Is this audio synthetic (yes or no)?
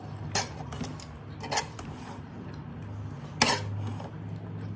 no